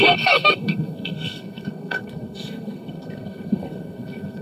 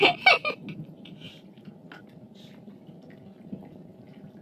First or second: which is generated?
first